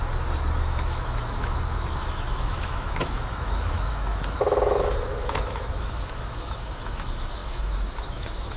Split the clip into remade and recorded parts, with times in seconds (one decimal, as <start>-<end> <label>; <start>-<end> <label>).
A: 0.0-0.6 recorded; 0.6-8.6 remade